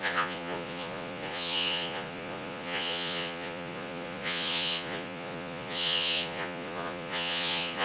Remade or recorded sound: remade